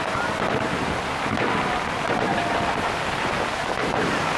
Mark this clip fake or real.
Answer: real